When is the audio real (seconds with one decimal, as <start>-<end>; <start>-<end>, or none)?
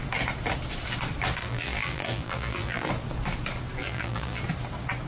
0.0-1.4; 2.9-3.8; 4.4-5.1